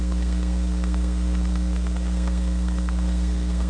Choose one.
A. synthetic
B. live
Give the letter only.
A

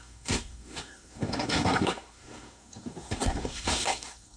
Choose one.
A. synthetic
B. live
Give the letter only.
A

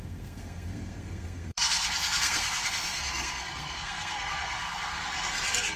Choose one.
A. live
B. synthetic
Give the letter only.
B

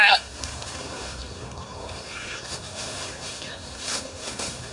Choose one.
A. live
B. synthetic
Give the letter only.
B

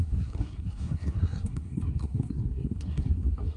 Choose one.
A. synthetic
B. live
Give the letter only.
A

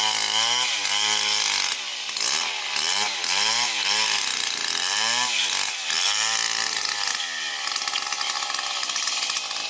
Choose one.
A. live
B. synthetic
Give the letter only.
A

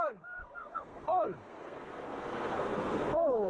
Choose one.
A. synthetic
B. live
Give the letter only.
A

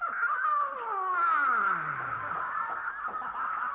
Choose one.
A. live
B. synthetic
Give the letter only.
A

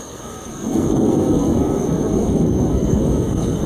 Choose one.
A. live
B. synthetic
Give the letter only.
B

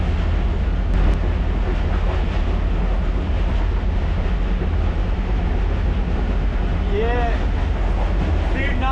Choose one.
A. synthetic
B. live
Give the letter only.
B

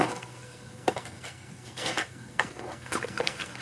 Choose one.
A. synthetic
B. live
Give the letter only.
A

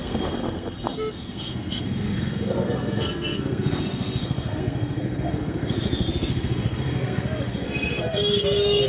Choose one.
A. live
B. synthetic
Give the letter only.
B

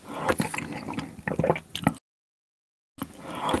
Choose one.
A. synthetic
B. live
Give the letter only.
B